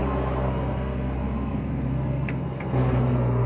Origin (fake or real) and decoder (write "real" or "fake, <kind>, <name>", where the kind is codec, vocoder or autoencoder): fake, codec, SNAC